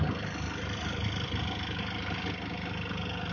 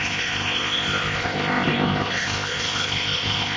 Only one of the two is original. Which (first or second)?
first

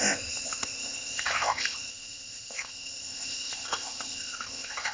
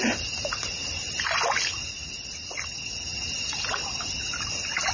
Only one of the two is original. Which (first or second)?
second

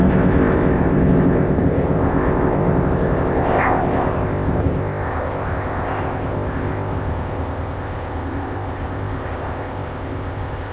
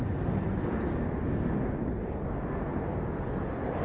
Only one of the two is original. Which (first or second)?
second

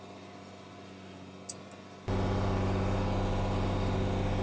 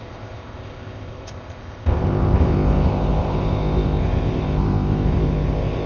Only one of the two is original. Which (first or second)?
first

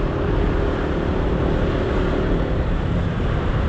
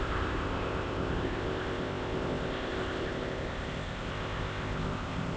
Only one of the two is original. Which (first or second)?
first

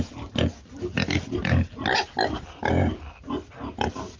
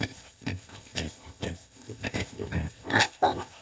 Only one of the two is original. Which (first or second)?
first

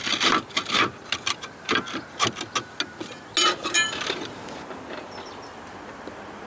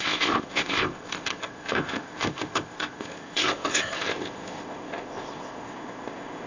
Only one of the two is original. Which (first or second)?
first